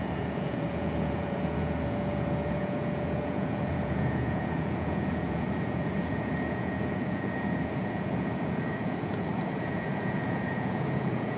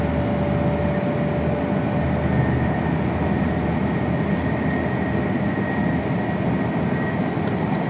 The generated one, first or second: first